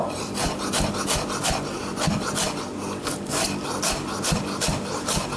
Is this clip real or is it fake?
real